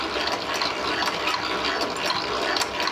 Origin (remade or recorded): recorded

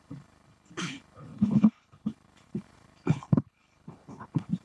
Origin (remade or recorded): remade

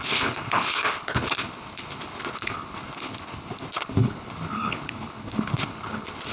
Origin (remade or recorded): remade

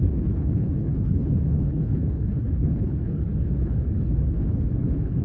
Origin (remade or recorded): remade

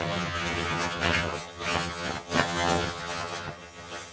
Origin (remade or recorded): remade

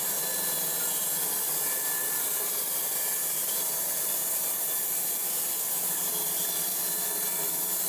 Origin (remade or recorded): remade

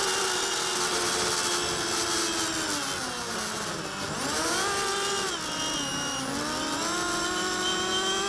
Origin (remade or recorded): recorded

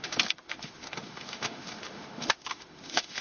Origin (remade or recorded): remade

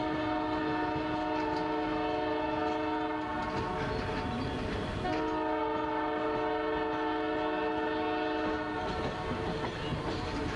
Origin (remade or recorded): recorded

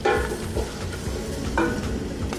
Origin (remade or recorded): recorded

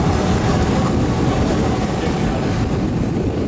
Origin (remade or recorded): recorded